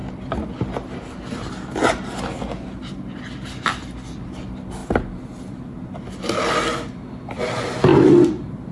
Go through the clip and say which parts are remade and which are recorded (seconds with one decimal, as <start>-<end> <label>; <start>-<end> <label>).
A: 0.0-4.8 recorded; 4.8-5.4 remade; 5.4-8.7 recorded